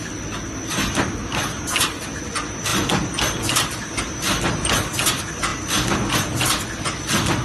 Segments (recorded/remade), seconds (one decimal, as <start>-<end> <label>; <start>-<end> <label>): 0.0-7.4 recorded